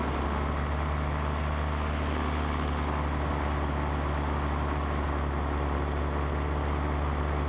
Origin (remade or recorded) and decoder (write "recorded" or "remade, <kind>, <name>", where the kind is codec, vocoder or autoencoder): recorded